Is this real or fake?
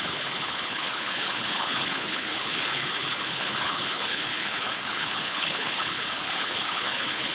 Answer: fake